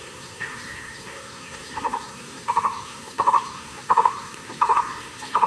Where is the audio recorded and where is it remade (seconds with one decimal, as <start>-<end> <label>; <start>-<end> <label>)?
0.0-5.5 remade